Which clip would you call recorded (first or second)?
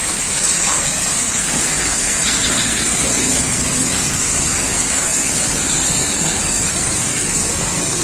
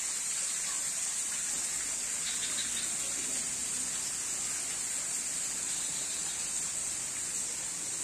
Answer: second